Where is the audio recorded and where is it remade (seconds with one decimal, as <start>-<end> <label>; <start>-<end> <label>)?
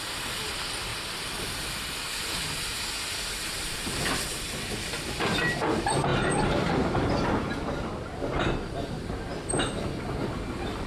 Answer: 0.0-0.9 recorded; 0.9-4.0 remade; 4.0-6.1 recorded; 6.1-9.5 remade; 9.5-10.9 recorded